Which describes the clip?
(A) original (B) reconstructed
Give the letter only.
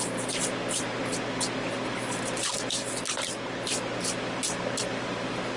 B